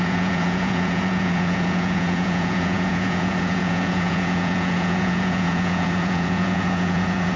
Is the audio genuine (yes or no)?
no